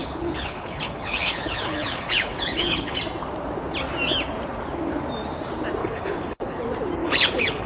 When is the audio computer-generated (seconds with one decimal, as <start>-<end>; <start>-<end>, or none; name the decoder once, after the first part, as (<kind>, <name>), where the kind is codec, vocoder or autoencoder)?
0.0-3.0 (codec, HILCodec); 5.8-6.6; 7.0-7.7